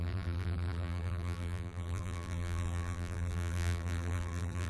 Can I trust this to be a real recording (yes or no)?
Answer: no